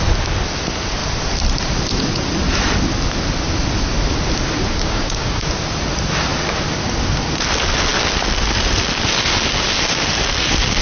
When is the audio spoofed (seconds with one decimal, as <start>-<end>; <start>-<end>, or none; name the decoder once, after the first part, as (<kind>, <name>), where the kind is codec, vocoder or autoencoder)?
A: 4.7-5.5 (codec, DAC)